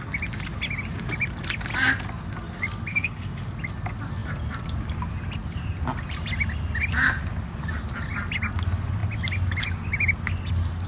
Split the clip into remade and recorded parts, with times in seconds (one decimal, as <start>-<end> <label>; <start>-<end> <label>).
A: 0.0-2.9 recorded; 2.9-3.5 remade; 3.5-10.9 recorded